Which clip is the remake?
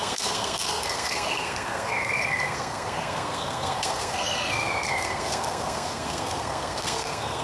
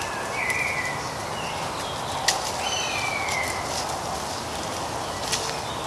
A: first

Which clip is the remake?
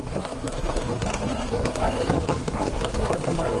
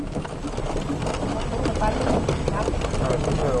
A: first